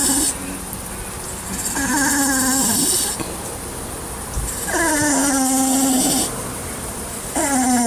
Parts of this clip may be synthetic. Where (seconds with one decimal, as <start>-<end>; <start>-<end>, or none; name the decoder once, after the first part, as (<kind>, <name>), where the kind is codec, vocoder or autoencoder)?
5.2-7.9 (vocoder, BigVGAN v2)